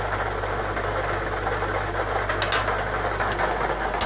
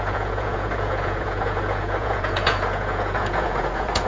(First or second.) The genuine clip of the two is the first